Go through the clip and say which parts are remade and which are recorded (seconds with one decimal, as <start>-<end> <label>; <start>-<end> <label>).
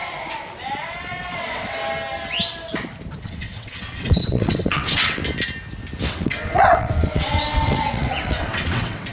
0.0-0.8 recorded; 0.8-1.8 remade; 1.8-3.2 recorded; 3.2-5.2 remade; 5.2-6.1 recorded; 6.1-9.1 remade